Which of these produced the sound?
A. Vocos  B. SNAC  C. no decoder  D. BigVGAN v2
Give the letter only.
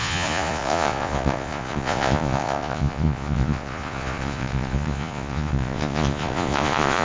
A